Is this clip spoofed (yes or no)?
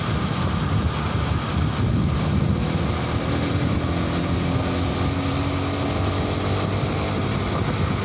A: no